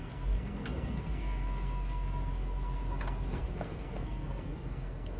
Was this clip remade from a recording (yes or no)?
yes